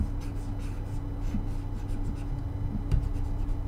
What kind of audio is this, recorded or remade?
recorded